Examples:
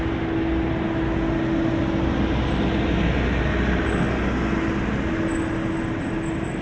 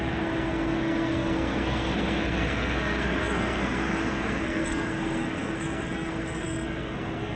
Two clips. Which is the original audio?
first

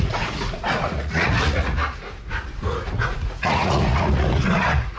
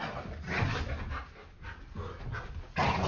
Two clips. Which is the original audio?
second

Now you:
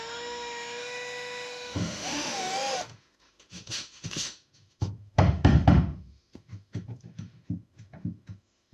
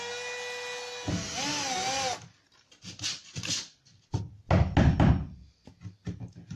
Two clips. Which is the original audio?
second